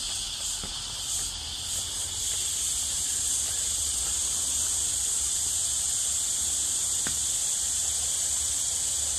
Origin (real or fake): real